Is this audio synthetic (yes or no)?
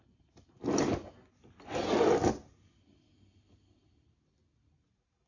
no